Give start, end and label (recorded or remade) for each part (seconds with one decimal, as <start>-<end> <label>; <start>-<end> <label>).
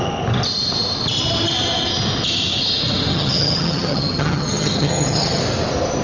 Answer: 0.0-3.1 recorded; 3.1-5.4 remade; 5.4-6.0 recorded